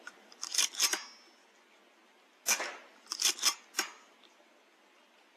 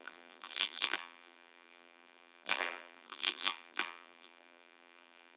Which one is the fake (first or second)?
second